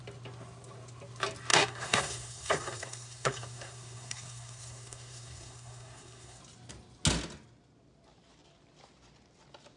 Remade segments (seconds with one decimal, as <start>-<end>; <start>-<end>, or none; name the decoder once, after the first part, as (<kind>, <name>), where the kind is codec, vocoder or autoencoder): 1.5-6.4 (codec, SNAC)

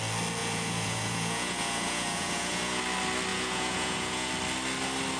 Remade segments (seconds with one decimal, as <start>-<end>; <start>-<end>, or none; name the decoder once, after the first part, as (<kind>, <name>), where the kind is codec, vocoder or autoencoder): 0.4-2.8 (vocoder, Vocos); 3.3-4.3